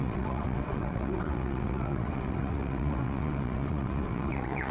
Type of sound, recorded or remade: remade